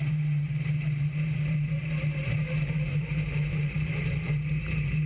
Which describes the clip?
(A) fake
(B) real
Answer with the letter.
A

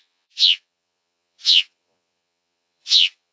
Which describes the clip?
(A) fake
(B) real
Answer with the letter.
A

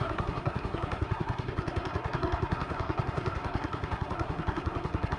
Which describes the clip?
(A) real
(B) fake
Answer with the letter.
B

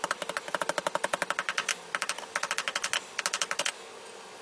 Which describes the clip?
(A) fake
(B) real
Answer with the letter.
B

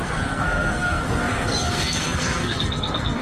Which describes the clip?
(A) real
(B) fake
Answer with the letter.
B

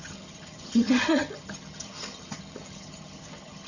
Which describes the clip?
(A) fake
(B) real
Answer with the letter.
A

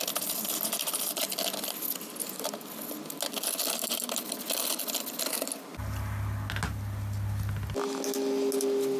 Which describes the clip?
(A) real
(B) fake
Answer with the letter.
A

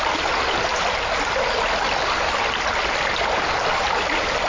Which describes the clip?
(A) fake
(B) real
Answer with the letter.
B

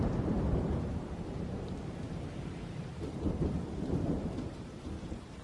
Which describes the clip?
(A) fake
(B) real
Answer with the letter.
A